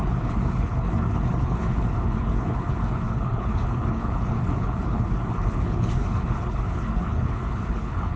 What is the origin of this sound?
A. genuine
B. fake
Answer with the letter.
B